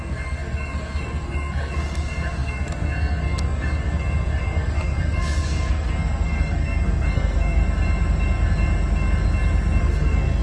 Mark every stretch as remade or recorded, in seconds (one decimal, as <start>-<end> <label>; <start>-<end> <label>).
0.0-7.6 remade; 7.6-9.8 recorded; 9.8-10.4 remade